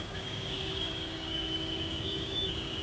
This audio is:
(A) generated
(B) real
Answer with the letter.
A